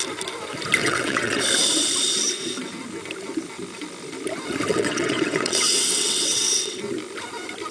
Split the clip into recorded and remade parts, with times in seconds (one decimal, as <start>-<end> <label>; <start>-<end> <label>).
0.0-0.8 recorded; 0.8-1.4 remade; 1.4-4.7 recorded; 4.7-6.8 remade; 6.8-7.7 recorded